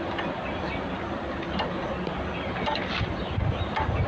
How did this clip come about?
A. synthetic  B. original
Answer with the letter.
B